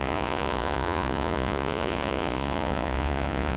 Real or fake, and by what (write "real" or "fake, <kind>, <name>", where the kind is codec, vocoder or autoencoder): fake, vocoder, Vocos